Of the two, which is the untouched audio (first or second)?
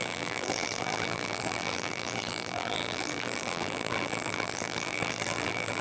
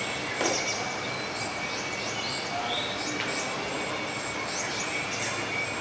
second